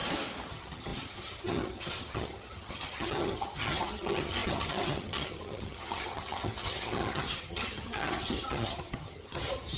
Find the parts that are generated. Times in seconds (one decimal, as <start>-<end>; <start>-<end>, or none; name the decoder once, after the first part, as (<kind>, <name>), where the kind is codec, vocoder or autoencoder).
0.5-9.8 (vocoder, HiFi-GAN)